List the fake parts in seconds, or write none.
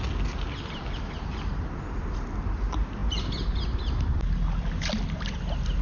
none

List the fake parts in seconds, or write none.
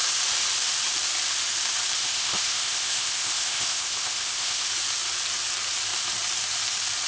2.0-4.7 (codec, ZipCodec)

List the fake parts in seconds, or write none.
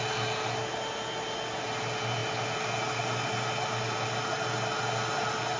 none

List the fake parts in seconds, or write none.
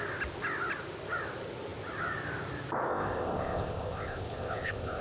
2.9-5.0 (codec, ZipCodec)